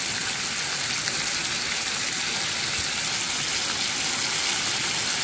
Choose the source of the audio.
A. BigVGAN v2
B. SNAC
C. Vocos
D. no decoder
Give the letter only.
D